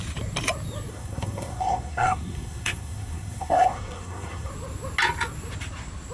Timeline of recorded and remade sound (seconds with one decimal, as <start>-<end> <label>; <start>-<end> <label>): 0.0-0.9 recorded; 0.9-4.5 remade; 4.5-6.1 recorded